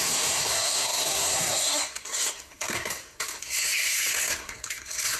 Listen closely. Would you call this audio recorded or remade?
remade